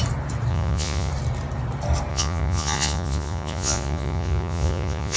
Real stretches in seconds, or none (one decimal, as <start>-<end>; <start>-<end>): 0.0-0.5; 1.1-2.1